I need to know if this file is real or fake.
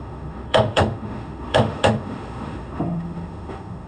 fake